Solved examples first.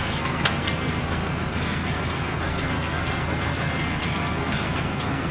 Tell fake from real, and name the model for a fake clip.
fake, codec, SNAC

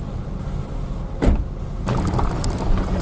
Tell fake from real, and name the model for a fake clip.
real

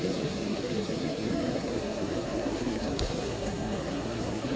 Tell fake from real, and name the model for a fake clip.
fake, codec, SNAC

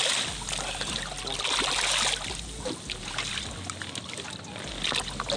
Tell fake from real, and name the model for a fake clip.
real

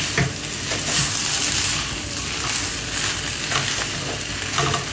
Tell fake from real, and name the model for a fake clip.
real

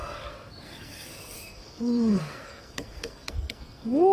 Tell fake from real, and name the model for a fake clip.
fake, codec, SNAC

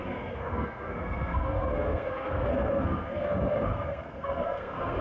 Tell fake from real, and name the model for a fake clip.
fake, codec, SNAC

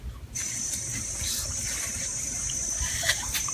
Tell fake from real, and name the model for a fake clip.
real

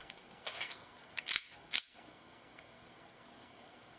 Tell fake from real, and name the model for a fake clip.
fake, codec, SNAC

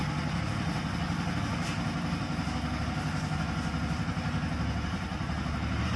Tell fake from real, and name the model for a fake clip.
real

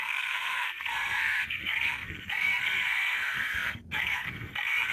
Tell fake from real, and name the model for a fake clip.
fake, codec, SNAC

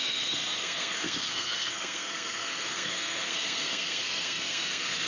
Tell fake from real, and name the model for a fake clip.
fake, codec, SNAC